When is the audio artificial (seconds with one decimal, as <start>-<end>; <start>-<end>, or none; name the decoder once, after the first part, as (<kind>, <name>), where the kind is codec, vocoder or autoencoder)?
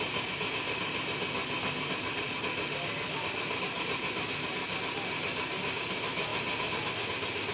none